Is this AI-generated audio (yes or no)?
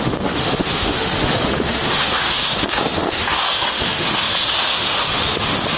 yes